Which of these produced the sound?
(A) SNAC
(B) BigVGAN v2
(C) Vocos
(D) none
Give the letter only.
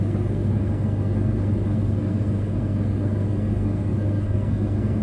A